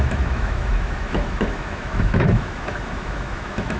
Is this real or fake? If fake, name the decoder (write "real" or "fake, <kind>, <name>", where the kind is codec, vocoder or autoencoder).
fake, autoencoder, DAC-VAE